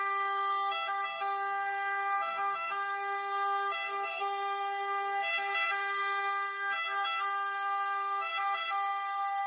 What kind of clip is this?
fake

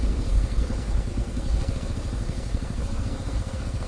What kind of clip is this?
fake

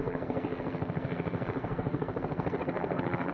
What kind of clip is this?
fake